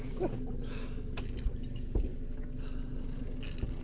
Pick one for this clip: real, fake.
real